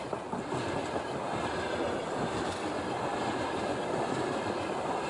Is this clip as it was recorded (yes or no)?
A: yes